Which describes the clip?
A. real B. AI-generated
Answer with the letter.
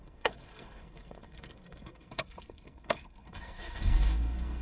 B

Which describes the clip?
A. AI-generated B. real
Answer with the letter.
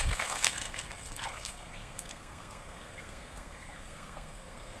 A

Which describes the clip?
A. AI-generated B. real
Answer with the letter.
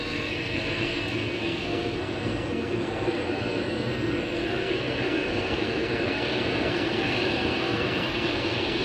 A